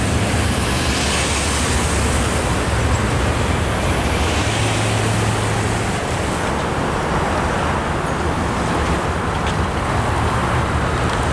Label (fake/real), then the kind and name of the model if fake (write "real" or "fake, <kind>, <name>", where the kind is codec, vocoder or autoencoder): real